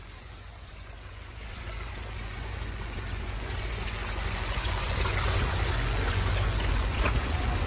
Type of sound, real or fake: fake